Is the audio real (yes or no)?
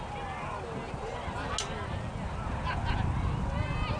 yes